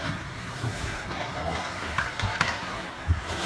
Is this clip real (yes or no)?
no